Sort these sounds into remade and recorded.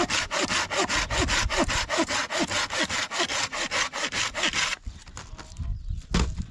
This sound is recorded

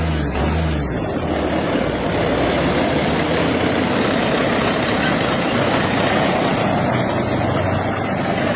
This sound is recorded